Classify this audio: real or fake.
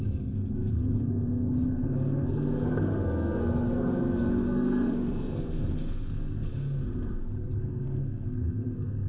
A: fake